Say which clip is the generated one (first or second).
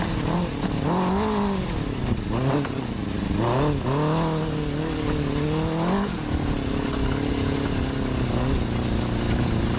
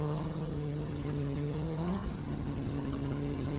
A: second